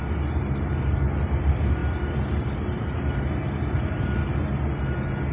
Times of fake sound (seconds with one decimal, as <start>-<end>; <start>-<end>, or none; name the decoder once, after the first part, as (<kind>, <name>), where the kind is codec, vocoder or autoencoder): none